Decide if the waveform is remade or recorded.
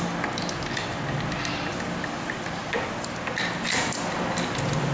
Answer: recorded